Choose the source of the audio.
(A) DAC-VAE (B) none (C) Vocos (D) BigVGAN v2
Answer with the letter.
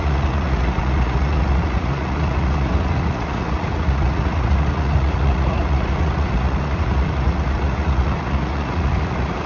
C